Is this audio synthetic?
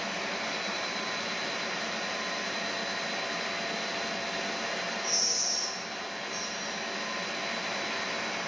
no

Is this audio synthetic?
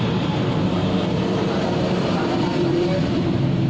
yes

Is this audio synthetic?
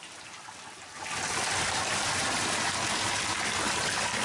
no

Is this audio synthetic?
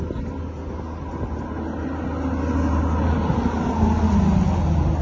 no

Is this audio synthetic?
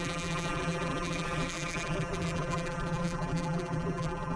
yes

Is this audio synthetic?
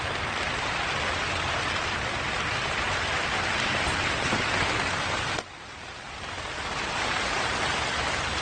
yes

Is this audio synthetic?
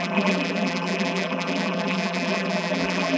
yes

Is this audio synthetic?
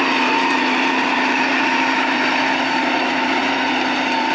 yes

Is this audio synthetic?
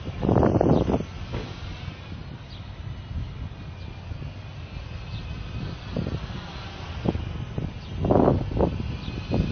no